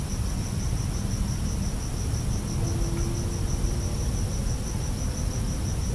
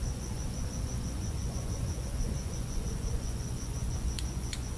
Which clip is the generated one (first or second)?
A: second